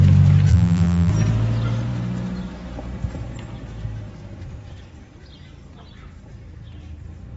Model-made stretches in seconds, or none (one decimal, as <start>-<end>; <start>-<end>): 0.5-1.1